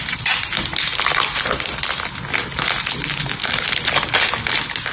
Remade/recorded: recorded